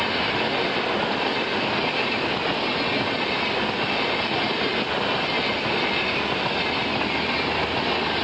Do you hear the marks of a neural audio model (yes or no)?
no